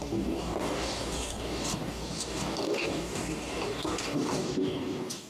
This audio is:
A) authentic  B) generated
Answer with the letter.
B